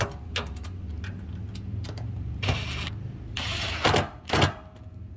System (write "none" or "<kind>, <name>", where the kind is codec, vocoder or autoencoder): none